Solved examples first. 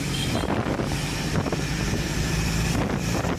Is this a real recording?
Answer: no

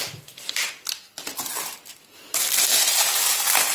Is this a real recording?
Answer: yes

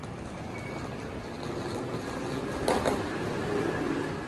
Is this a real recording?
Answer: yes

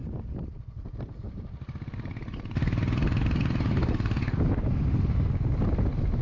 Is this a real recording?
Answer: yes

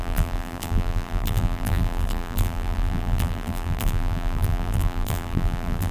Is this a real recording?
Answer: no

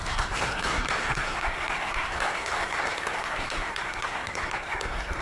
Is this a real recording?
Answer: no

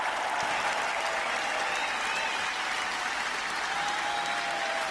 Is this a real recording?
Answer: yes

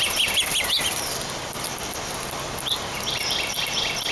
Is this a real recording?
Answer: no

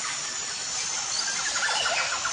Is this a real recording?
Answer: yes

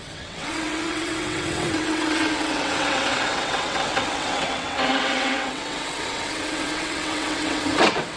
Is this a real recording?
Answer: no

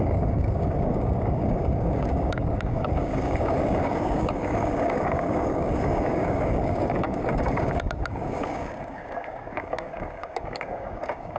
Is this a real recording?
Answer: no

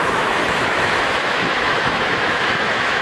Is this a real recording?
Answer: no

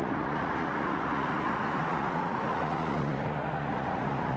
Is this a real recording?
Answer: no